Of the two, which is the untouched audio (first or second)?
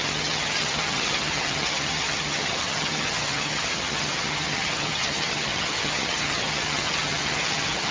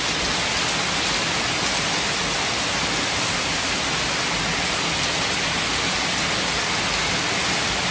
second